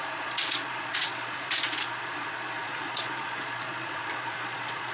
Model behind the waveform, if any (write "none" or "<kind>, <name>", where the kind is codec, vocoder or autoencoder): vocoder, Vocos